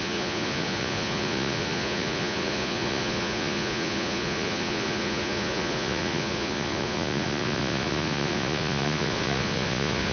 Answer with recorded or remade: remade